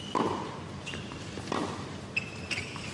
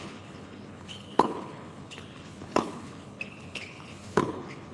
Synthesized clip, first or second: second